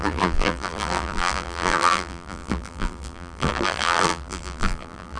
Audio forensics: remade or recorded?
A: remade